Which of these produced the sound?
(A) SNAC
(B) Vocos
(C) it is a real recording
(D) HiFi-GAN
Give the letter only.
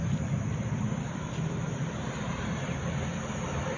C